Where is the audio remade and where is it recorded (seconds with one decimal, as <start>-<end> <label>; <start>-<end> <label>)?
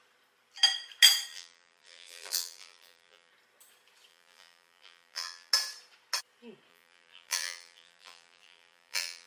0.0-1.3 recorded; 1.3-3.3 remade; 3.3-4.1 recorded; 4.1-5.5 remade; 5.5-6.7 recorded; 6.7-9.3 remade